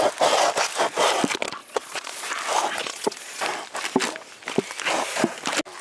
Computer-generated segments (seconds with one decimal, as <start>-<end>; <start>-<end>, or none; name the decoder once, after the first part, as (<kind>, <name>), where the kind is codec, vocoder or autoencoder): 1.6-2.3 (vocoder, Vocos); 2.8-3.4